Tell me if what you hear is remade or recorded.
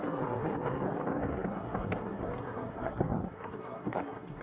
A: remade